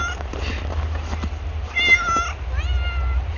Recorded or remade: recorded